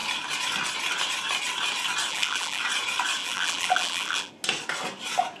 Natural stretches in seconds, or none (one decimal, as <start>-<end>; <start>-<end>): 0.0-2.1; 2.6-3.2; 4.3-5.4